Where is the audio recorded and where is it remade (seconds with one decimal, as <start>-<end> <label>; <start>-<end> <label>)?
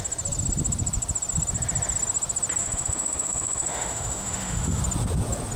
0.0-2.6 recorded; 2.6-4.8 remade; 4.8-5.6 recorded